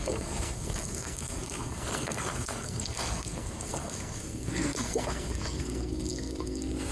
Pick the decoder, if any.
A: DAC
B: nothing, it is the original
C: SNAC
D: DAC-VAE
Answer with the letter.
C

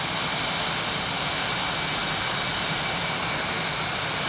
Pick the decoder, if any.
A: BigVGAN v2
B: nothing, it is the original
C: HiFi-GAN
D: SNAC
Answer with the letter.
B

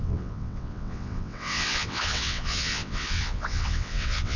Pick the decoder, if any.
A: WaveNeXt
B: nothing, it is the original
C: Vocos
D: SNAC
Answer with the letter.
A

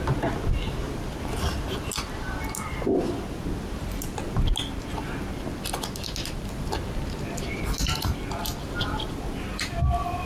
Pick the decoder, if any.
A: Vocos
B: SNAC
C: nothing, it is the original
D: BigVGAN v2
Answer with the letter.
C